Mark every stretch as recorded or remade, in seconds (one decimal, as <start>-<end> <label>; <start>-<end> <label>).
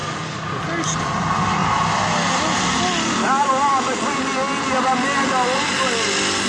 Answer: 0.0-0.6 remade; 0.6-6.5 recorded